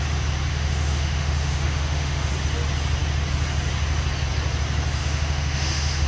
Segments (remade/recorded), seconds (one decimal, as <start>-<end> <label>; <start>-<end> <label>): 0.0-0.5 recorded; 0.5-2.3 remade; 2.3-5.0 recorded; 5.0-6.1 remade